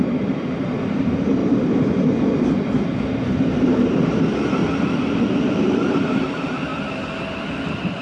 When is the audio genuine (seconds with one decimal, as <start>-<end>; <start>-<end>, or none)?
1.4-2.9; 4.6-5.6; 6.7-8.0